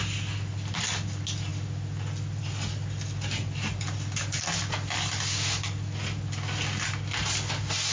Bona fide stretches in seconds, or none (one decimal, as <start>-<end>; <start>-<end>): 0.0-7.9